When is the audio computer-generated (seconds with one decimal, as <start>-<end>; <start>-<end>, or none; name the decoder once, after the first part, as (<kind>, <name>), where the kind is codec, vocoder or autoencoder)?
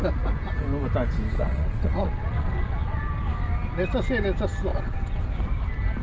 1.3-3.0 (vocoder, WaveNeXt); 4.7-5.2